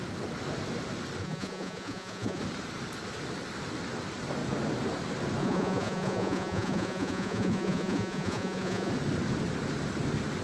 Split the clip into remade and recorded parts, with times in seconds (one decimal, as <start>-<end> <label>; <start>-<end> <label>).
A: 0.0-1.2 recorded; 1.2-2.4 remade; 2.4-5.4 recorded; 5.4-8.9 remade; 8.9-10.4 recorded